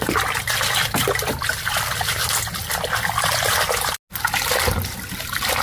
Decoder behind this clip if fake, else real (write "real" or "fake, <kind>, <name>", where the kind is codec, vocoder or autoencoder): real